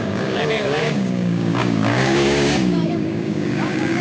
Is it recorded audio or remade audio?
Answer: remade